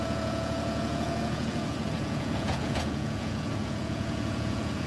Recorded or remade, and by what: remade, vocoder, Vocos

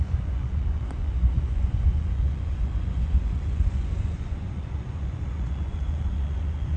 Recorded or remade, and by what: remade, vocoder, Vocos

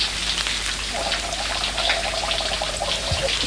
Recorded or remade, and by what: recorded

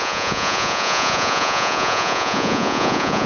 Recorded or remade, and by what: remade, vocoder, Vocos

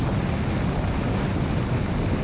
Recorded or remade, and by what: recorded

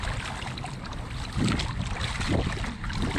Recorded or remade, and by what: recorded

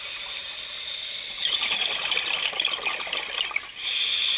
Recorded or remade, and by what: recorded